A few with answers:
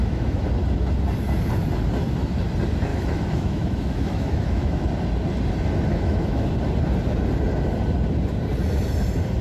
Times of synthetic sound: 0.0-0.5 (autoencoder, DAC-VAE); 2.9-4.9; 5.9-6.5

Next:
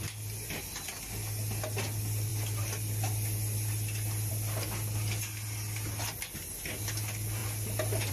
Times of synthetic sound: none